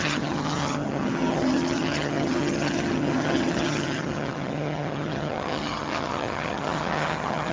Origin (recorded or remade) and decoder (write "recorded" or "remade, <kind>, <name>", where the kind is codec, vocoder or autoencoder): remade, vocoder, HiFi-GAN